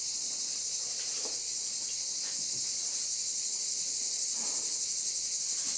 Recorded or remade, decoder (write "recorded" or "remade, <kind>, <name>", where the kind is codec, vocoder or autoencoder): recorded